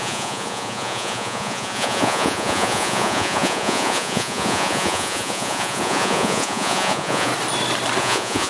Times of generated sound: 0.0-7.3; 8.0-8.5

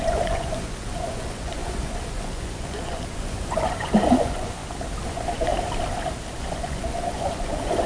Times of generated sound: 0.0-4.6; 5.1-5.5; 6.4-7.9

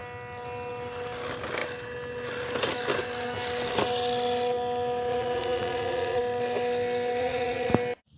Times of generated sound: 5.1-6.2; 7.2-7.7